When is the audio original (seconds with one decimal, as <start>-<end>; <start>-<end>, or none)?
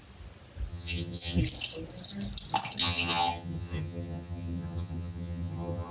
0.0-0.7; 1.4-2.8